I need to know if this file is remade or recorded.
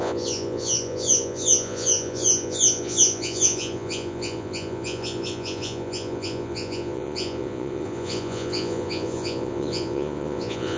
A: remade